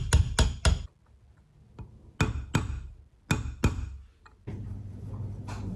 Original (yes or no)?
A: yes